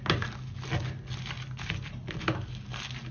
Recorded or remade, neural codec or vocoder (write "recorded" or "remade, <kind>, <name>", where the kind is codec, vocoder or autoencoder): recorded